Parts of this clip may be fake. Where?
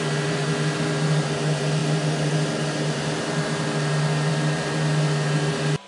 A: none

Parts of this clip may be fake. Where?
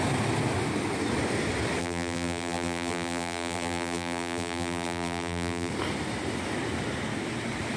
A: 1.8-5.7 (vocoder, BigVGAN v2)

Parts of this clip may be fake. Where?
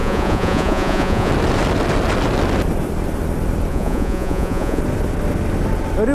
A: 0.0-1.3 (vocoder, Vocos); 3.7-4.8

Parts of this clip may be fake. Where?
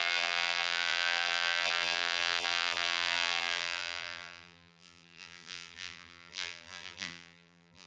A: 0.0-7.9 (vocoder, BigVGAN v2)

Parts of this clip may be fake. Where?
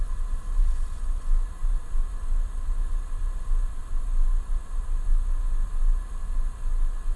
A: none